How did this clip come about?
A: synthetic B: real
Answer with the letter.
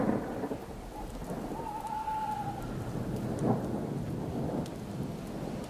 B